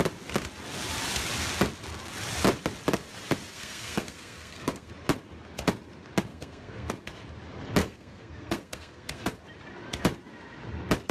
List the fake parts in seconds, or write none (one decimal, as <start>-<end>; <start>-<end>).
3.5-4.9; 6.3-6.9; 7.8-9.4